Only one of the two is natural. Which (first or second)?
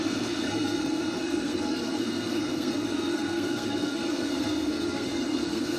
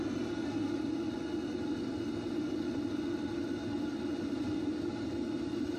second